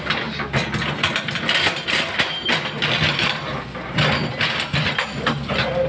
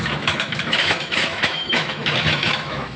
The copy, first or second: second